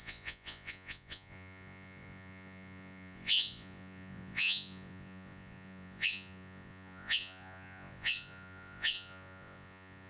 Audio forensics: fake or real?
fake